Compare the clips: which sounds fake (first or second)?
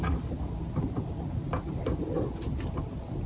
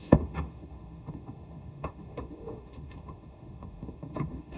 second